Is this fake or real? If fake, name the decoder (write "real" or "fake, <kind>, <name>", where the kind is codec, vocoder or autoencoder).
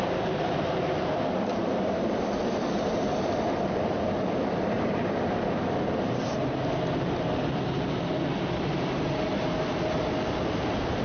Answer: fake, vocoder, BigVGAN v2